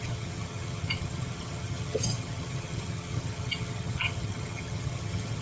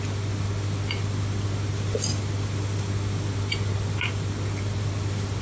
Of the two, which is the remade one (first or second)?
first